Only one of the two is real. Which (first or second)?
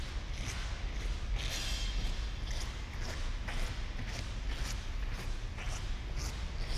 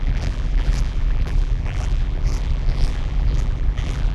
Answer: first